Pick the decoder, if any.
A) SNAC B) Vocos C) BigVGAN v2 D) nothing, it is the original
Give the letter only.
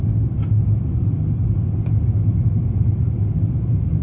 D